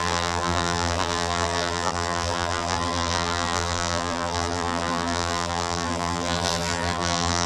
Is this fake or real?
fake